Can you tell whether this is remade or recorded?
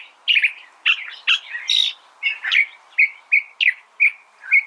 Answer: recorded